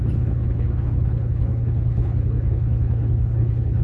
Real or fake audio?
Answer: fake